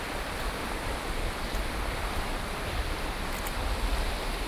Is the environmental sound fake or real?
real